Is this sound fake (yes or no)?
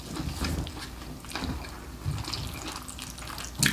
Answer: no